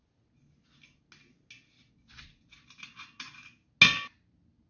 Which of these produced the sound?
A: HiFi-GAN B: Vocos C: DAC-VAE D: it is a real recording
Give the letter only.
D